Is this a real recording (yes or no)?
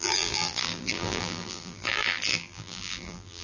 no